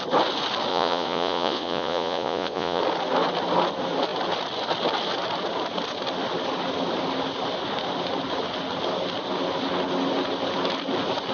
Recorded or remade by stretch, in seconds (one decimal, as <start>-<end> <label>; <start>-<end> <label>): 0.0-0.7 recorded; 0.7-2.8 remade; 2.8-11.3 recorded